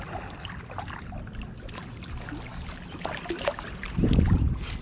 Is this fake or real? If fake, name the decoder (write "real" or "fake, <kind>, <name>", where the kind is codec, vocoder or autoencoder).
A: real